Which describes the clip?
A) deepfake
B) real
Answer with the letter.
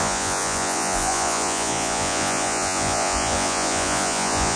A